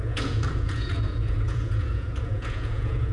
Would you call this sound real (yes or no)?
no